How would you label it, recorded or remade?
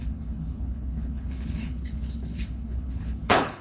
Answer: remade